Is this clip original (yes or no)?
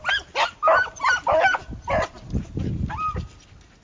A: yes